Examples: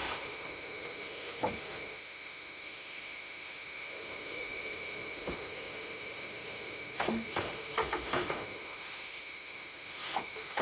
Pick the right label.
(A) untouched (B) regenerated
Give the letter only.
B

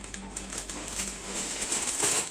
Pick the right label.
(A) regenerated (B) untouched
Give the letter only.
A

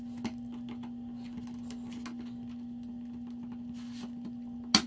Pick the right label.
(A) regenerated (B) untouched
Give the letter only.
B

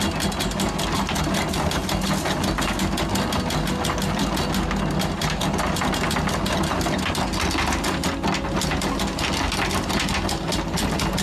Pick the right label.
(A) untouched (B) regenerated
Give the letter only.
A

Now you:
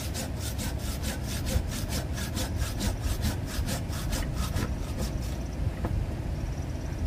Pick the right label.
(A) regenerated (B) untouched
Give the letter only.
B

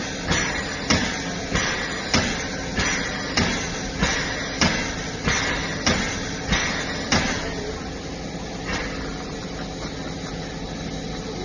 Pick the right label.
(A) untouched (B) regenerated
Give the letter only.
A